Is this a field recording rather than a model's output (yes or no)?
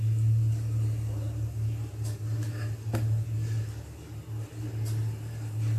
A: yes